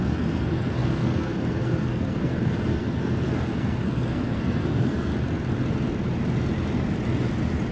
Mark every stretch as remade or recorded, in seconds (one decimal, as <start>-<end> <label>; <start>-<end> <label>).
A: 0.0-5.1 remade; 5.1-7.7 recorded